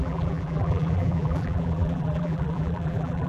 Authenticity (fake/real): fake